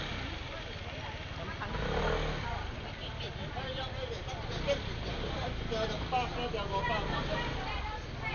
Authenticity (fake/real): real